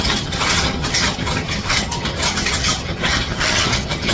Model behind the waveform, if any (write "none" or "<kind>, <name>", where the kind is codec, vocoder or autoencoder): vocoder, HiFi-GAN